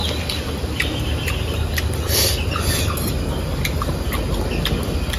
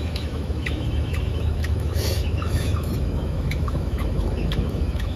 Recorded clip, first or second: first